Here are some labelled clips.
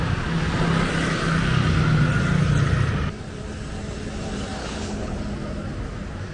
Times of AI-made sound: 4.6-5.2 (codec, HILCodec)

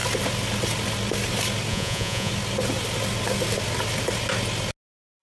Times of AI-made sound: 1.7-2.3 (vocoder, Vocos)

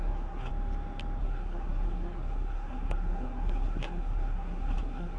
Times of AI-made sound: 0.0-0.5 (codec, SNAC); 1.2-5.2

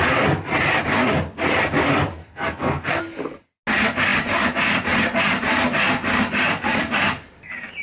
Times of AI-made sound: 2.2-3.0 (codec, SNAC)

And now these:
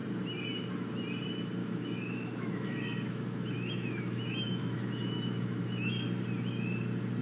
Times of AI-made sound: 1.6-5.9 (autoencoder, DAC-VAE)

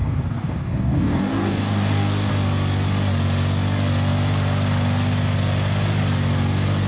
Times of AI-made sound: 0.0-2.3 (codec, DAC)